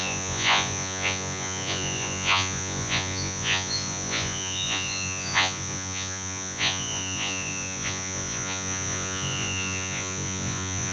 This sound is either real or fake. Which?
fake